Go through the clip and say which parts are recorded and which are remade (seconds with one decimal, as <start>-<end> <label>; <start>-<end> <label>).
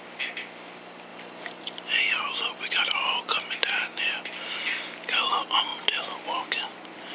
0.0-7.1 recorded